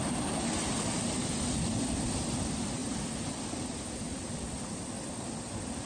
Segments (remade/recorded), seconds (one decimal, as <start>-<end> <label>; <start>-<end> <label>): 0.0-5.9 recorded